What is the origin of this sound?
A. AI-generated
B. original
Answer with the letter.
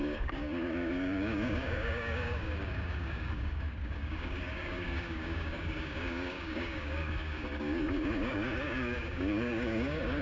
A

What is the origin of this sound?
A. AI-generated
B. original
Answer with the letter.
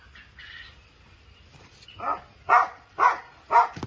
B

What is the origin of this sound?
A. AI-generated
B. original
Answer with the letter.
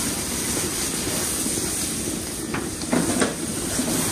B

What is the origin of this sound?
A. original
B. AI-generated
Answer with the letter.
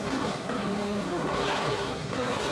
B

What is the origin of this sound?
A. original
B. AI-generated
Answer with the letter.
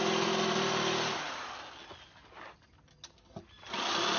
A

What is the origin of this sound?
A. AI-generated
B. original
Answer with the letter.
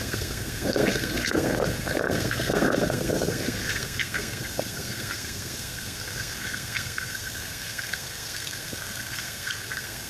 A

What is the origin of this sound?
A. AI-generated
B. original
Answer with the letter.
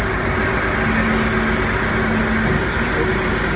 B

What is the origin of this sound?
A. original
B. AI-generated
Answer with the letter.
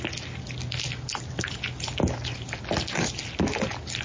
A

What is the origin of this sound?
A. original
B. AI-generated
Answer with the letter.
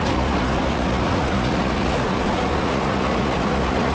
B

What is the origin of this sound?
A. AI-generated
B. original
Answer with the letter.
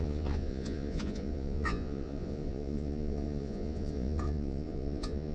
A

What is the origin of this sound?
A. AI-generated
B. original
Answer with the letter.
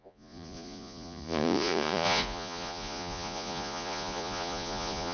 A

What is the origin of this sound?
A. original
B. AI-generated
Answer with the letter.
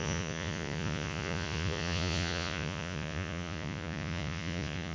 B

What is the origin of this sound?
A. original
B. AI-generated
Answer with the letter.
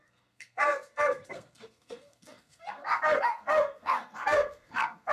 B